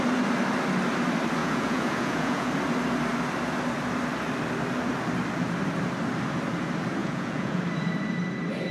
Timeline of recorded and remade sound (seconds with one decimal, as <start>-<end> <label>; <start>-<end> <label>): 0.0-1.4 recorded; 1.4-2.5 remade; 2.5-7.0 recorded; 7.0-7.6 remade; 7.6-8.7 recorded